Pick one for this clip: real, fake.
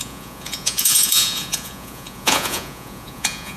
fake